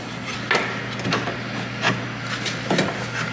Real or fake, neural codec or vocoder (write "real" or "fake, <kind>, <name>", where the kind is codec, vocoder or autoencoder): real